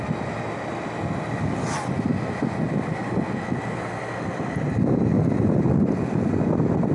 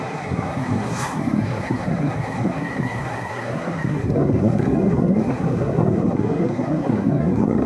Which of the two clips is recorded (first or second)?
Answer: first